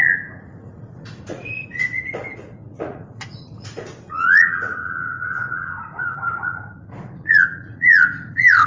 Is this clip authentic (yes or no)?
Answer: no